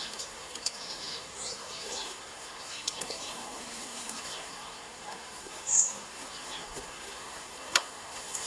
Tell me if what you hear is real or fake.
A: fake